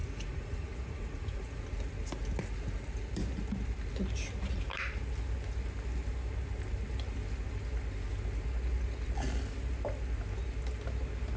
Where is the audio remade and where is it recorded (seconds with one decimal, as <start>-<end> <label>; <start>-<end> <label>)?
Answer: 0.0-1.6 remade; 1.6-11.4 recorded